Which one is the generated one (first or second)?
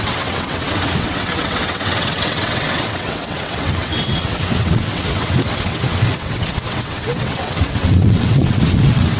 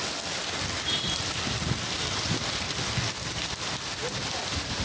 first